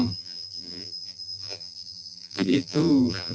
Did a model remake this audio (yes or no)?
yes